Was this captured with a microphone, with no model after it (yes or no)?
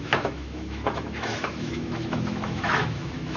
no